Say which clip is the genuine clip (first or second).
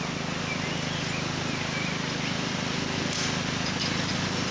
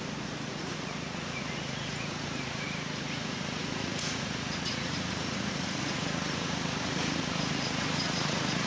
first